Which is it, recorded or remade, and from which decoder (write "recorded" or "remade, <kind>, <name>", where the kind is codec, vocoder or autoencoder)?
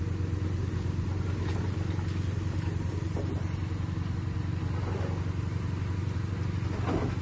recorded